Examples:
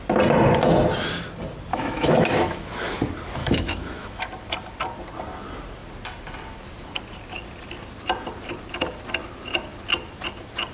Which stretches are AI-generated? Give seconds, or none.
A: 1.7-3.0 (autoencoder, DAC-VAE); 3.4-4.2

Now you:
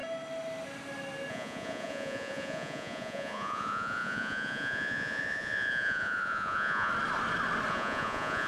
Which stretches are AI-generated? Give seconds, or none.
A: 1.3-6.9 (vocoder, Vocos); 7.7-8.5

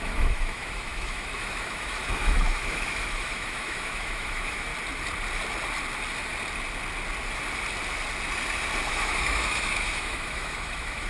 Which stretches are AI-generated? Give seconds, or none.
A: 0.0-4.7 (autoencoder, DAC-VAE); 8.9-11.1

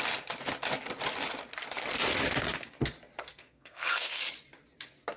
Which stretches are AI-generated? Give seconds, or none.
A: 3.2-4.2 (codec, SNAC)

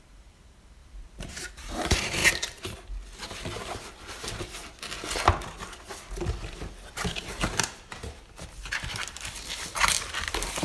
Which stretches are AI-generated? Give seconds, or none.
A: 0.0-2.2 (vocoder, BigVGAN v2); 7.1-10.6